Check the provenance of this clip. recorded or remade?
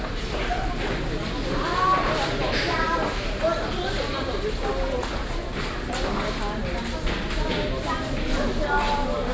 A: recorded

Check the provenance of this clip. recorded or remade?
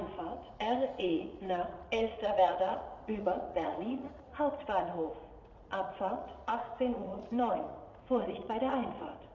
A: remade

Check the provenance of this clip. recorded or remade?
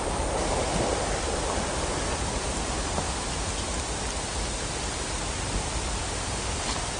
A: recorded